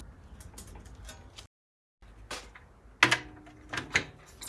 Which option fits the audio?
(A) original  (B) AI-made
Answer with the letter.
A